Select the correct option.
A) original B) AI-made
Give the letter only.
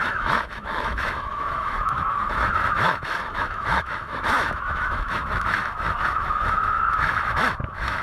B